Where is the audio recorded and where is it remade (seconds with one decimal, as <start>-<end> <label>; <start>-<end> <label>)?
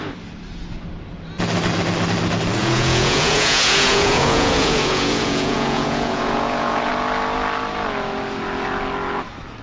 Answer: 0.0-2.6 recorded; 2.6-6.9 remade; 6.9-9.6 recorded